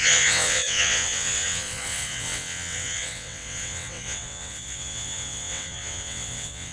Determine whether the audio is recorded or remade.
remade